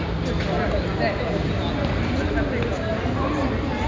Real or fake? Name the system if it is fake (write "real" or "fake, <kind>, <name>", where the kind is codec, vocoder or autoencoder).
real